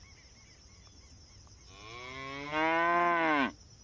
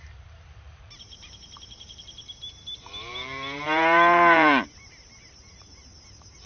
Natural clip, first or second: first